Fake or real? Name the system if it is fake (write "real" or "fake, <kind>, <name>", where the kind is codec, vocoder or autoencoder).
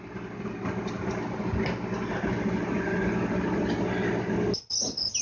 real